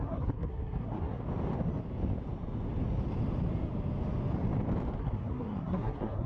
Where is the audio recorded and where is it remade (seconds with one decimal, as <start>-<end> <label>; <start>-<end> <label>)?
0.0-1.2 remade; 1.2-5.0 recorded; 5.0-6.3 remade